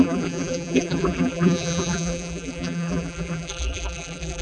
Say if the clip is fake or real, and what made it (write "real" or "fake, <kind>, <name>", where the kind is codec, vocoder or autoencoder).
fake, vocoder, BigVGAN v2